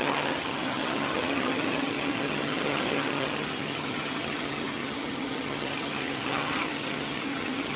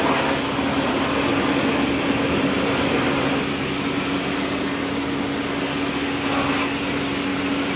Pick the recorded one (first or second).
second